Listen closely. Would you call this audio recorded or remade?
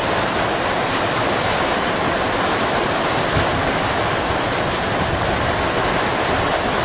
remade